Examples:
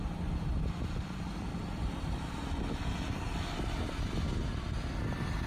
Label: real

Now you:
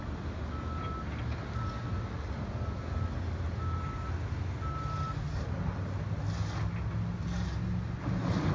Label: real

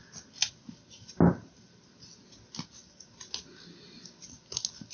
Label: real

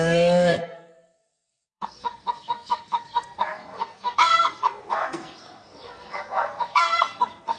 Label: fake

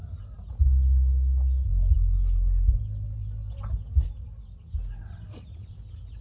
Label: real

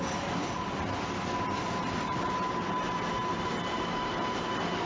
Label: real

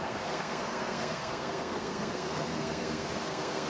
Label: fake